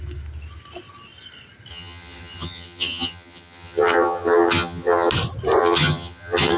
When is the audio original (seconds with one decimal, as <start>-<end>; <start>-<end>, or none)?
0.0-1.7; 5.1-5.6